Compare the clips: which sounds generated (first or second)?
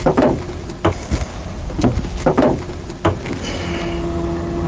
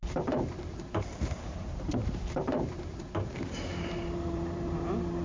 second